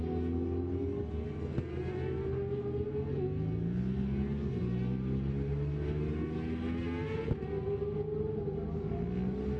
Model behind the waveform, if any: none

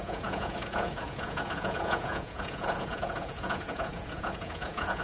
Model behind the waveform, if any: vocoder, Vocos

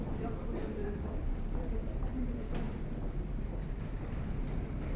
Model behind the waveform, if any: none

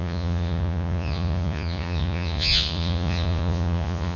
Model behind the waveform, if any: vocoder, Vocos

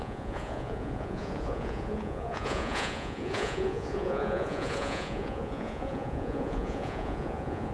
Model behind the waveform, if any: vocoder, Vocos